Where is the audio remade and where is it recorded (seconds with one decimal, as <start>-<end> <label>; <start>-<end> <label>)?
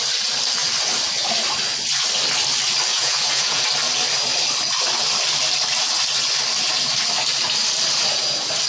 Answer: 0.0-2.9 recorded; 2.9-3.6 remade; 3.6-8.7 recorded